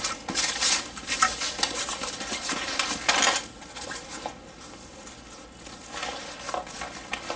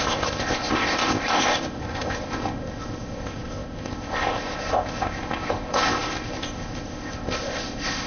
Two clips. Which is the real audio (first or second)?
first